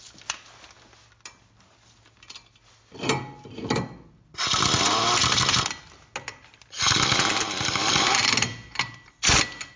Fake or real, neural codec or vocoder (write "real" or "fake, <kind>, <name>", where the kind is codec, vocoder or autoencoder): real